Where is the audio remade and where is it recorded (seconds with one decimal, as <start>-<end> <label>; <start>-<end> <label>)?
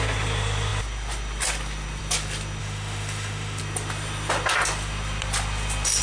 0.0-2.6 recorded; 2.6-3.6 remade; 3.6-6.0 recorded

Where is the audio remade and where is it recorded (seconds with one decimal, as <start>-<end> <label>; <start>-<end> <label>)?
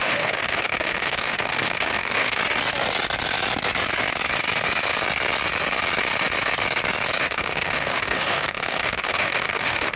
0.0-2.4 remade; 2.4-7.2 recorded; 7.2-10.0 remade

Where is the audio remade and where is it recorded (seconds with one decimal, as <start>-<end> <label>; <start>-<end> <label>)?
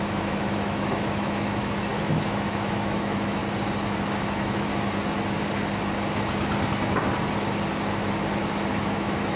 0.0-3.4 remade; 3.4-4.2 recorded; 4.2-4.7 remade; 4.7-8.7 recorded; 8.7-9.4 remade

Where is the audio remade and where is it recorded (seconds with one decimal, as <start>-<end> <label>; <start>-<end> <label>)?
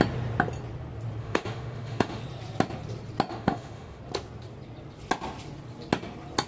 0.0-1.2 recorded; 1.2-2.2 remade; 2.2-3.3 recorded; 3.3-4.0 remade; 4.0-6.5 recorded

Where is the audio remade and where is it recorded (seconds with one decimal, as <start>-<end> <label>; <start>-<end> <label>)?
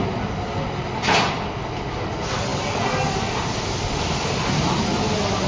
0.0-5.5 recorded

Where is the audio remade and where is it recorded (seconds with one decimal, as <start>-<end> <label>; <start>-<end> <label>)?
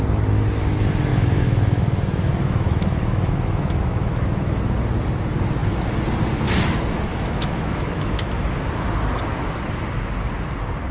0.0-1.1 recorded; 1.1-4.6 remade; 4.6-7.1 recorded; 7.1-8.6 remade; 8.6-10.9 recorded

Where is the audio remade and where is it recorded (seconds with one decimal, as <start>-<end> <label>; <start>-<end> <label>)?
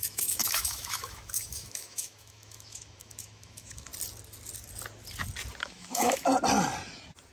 0.0-3.9 remade; 3.9-5.6 recorded; 5.6-6.3 remade; 6.3-7.3 recorded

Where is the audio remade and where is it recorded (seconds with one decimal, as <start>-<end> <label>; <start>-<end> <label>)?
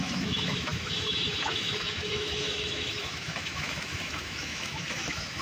0.0-5.4 remade